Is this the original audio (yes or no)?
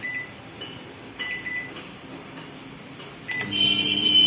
yes